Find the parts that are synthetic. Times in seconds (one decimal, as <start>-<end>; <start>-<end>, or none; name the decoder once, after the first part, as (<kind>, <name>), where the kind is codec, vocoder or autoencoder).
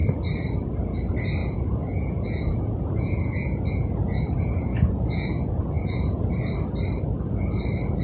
1.4-6.2 (vocoder, Vocos)